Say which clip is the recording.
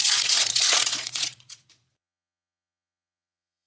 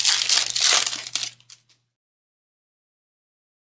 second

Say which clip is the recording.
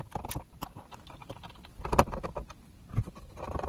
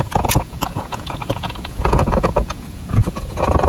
first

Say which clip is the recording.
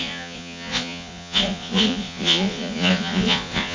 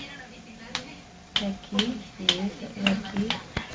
second